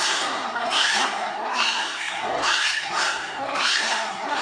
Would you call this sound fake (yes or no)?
yes